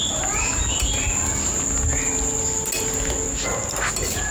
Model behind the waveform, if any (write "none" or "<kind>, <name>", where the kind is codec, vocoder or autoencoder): none